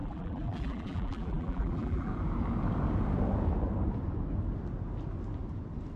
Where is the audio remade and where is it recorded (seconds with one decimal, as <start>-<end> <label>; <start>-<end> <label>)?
0.0-2.1 remade; 2.1-6.0 recorded

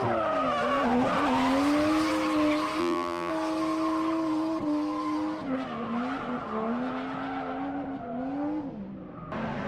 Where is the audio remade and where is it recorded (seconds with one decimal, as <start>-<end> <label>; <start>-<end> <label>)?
0.0-2.8 recorded; 2.8-3.3 remade; 3.3-9.7 recorded

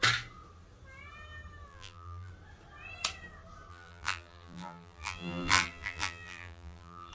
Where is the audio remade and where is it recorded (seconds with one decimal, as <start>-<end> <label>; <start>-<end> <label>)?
0.0-1.7 recorded; 1.7-2.3 remade; 2.3-3.7 recorded; 3.7-7.1 remade

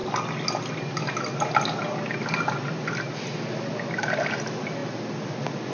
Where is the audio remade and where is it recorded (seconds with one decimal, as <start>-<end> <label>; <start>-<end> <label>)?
0.0-5.7 recorded

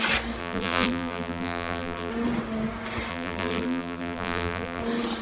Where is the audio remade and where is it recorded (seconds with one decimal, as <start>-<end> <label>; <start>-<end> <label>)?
0.0-0.4 recorded; 0.4-2.1 remade; 2.1-3.1 recorded; 3.1-4.8 remade; 4.8-5.2 recorded

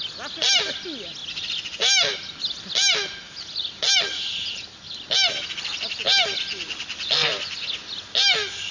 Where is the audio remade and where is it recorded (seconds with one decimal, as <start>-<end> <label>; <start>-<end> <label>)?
0.0-8.7 recorded